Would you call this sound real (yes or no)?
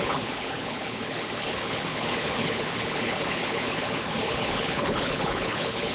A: no